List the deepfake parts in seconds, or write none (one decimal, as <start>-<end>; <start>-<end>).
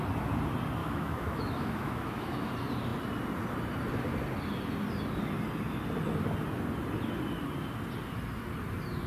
0.8-2.5